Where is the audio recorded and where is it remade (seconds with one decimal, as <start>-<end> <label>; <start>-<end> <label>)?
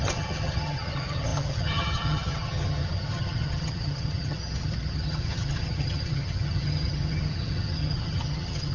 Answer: 0.0-8.7 remade